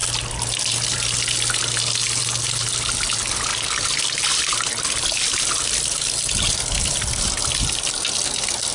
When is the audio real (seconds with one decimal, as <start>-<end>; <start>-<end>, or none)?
0.0-8.7